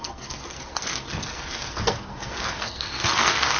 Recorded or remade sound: remade